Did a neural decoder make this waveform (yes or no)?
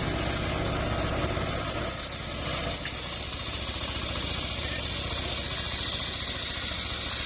no